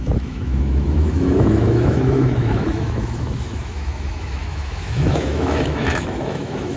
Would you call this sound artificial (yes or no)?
yes